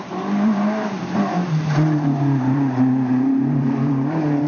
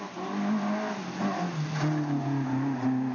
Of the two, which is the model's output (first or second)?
first